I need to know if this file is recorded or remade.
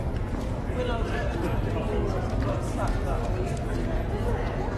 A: recorded